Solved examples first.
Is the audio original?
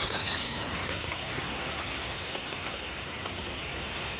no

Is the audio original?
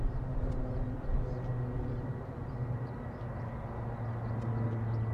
yes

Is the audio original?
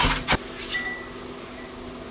yes